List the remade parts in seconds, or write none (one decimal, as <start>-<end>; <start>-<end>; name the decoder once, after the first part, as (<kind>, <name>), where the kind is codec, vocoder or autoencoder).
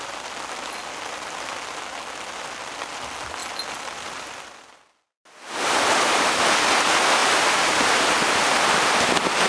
7.2-7.8 (vocoder, BigVGAN v2)